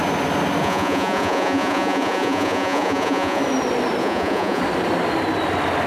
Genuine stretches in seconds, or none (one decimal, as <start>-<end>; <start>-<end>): 0.0-0.6; 3.4-4.0; 4.6-5.9